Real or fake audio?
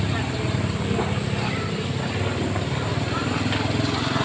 real